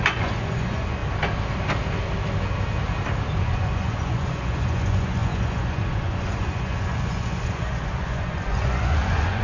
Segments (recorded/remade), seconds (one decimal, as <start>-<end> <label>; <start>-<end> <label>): 0.0-1.0 remade; 1.0-3.4 recorded; 3.4-9.4 remade